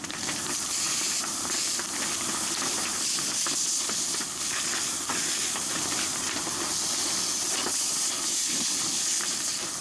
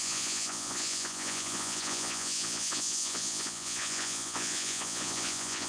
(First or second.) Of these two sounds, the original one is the first